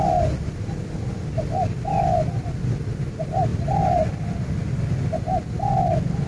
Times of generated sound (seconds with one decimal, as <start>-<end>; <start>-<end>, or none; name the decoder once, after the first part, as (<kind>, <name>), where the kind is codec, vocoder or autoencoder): none